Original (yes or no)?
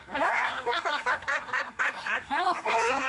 no